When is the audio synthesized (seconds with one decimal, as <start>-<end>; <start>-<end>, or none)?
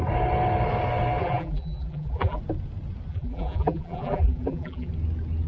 1.2-2.4; 3.1-4.9